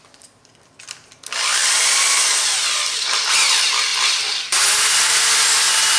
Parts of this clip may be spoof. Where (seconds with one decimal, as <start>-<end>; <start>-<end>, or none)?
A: none